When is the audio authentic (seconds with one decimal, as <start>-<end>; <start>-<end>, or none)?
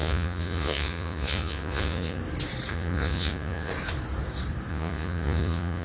2.2-2.7; 3.7-4.7